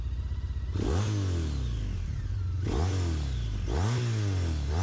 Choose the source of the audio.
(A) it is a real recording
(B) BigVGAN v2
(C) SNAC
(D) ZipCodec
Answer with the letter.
A